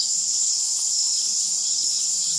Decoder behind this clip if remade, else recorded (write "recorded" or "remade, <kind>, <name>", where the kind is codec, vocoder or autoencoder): remade, codec, HILCodec